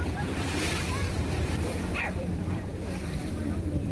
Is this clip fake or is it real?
fake